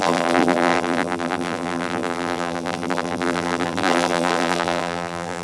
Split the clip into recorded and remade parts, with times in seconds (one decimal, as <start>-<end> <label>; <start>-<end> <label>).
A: 0.0-5.4 remade